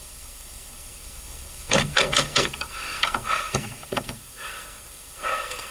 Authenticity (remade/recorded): remade